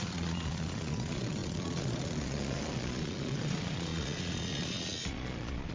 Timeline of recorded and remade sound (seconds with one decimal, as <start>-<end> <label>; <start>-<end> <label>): 0.0-5.7 remade